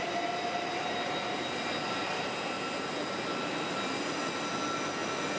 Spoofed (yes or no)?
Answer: no